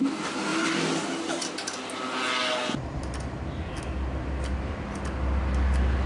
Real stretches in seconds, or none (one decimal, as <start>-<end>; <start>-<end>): 0.0-6.1